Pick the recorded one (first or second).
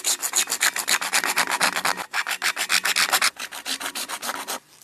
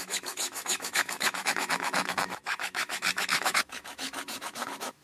first